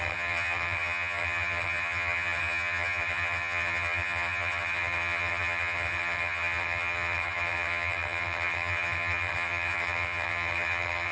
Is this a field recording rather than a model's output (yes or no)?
no